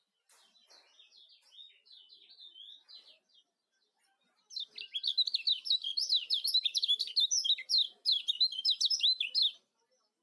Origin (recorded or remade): recorded